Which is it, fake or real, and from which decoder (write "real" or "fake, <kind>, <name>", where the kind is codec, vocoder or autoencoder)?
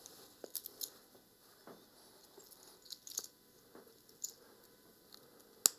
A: real